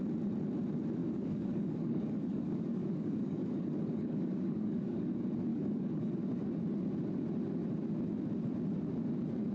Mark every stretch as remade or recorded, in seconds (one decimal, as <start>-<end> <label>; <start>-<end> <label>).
0.0-1.0 recorded; 1.0-5.1 remade; 5.1-5.5 recorded; 5.5-6.1 remade; 6.1-9.5 recorded